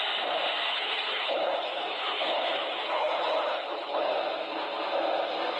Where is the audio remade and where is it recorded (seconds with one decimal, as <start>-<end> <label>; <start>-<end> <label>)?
0.0-0.7 recorded; 0.7-4.1 remade; 4.1-5.6 recorded